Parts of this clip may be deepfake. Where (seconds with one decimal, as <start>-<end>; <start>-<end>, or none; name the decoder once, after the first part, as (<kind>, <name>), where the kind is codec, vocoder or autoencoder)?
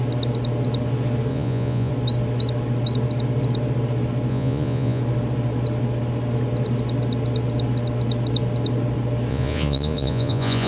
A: 1.3-1.9 (vocoder, Vocos); 4.3-5.0; 9.3-10.7